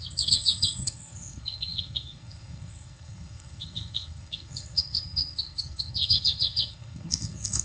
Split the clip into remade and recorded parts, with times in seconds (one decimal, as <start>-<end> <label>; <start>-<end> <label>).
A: 0.0-7.6 remade